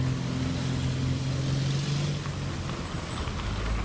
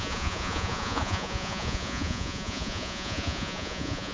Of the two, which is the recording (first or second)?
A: first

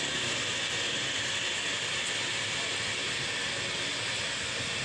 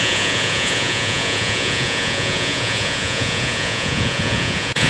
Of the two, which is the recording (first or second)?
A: first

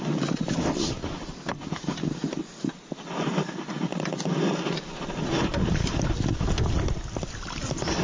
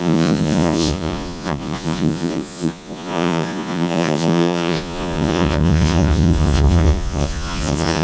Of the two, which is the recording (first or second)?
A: first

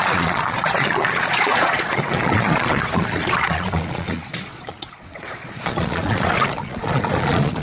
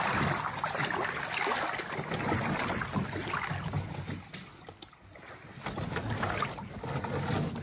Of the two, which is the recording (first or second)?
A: second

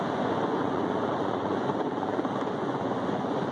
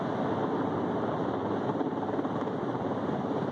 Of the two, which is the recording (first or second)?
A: second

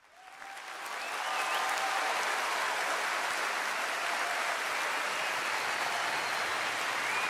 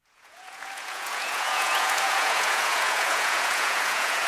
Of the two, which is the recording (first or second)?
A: first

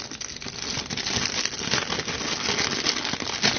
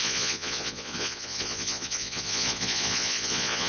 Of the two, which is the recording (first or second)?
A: first